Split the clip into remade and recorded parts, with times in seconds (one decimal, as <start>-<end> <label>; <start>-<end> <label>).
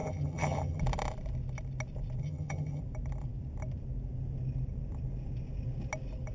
0.0-0.8 remade; 0.8-2.2 recorded; 2.2-2.8 remade; 2.8-6.3 recorded